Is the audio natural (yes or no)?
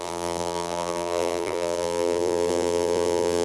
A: no